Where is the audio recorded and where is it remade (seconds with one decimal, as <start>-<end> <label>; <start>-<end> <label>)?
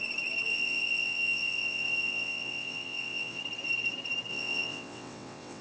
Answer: 0.0-0.5 recorded; 0.5-3.4 remade; 3.4-4.3 recorded; 4.3-5.6 remade